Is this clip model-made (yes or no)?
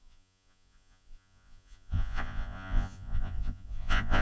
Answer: yes